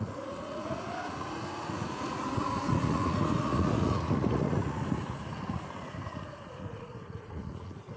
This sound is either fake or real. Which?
fake